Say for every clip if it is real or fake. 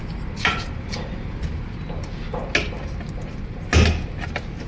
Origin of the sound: real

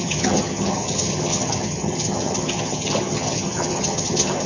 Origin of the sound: fake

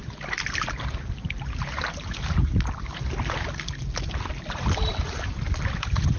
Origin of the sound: real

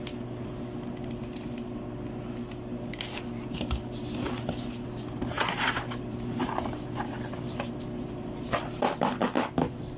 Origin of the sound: real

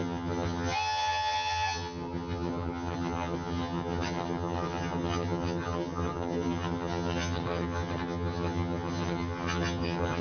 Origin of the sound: fake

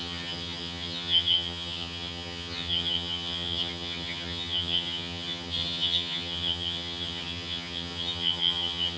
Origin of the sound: fake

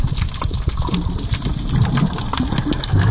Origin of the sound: real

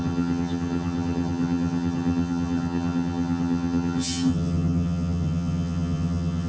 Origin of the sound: fake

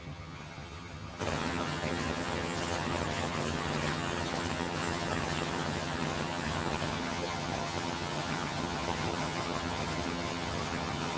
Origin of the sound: fake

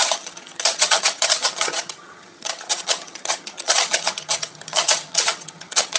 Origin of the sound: fake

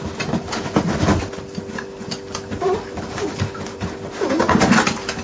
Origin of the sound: real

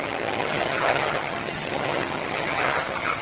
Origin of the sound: fake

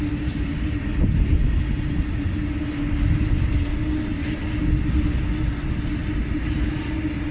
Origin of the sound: real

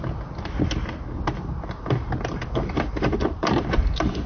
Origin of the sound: real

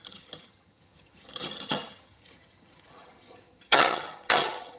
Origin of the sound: fake